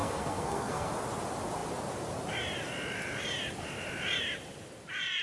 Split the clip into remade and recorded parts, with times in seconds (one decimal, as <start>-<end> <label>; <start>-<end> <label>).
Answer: 0.0-0.9 remade; 0.9-5.2 recorded